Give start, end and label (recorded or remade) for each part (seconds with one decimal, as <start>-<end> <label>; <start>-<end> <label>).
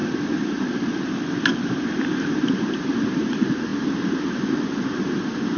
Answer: 0.0-3.1 remade; 3.1-3.7 recorded; 3.7-4.7 remade; 4.7-5.6 recorded